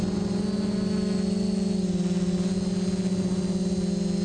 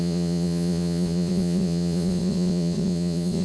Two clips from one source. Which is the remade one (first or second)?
second